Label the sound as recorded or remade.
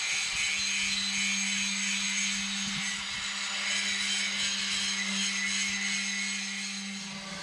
recorded